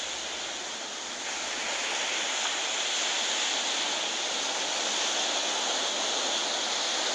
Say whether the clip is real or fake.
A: real